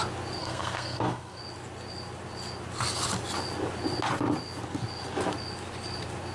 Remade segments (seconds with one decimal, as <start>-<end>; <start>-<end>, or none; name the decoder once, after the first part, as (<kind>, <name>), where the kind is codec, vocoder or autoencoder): 0.4-1.4 (codec, SNAC)